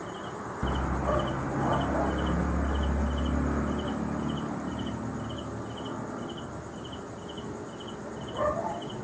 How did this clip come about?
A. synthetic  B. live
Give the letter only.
B